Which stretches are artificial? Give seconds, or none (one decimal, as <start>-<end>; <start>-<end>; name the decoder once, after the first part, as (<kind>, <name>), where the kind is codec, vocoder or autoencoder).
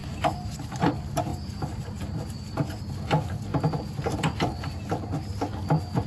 0.0-0.8 (vocoder, BigVGAN v2); 1.3-2.8